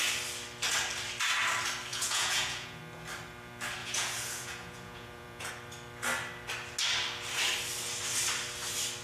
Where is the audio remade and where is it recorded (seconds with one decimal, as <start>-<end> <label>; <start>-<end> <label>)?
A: 0.0-1.9 recorded; 1.9-2.8 remade; 2.8-3.8 recorded; 3.8-5.5 remade; 5.5-9.0 recorded

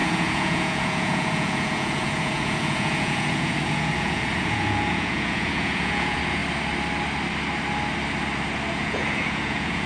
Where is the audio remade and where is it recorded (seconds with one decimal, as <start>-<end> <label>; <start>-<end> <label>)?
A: 0.0-6.4 remade; 6.4-8.7 recorded; 8.7-9.9 remade

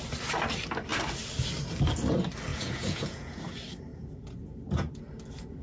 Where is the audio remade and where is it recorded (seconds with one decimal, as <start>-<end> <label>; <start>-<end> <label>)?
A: 0.0-2.5 recorded; 2.5-3.4 remade; 3.4-3.9 recorded; 3.9-5.0 remade; 5.0-5.6 recorded

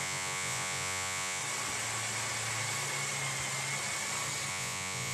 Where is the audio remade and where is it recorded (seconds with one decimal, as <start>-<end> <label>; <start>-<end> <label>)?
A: 0.0-1.4 remade; 1.4-4.5 recorded; 4.5-5.1 remade